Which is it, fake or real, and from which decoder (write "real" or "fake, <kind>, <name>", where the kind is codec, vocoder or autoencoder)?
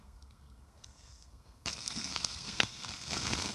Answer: fake, codec, SNAC